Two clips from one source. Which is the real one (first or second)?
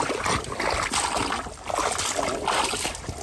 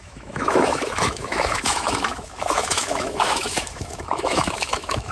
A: first